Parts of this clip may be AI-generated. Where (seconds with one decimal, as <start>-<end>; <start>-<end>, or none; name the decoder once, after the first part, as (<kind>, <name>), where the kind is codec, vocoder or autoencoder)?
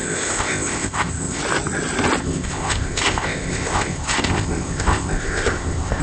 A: 0.0-1.4 (codec, ZipCodec); 2.2-6.0